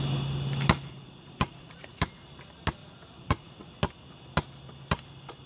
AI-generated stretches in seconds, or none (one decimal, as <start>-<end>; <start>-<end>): 0.9-2.0; 2.8-3.7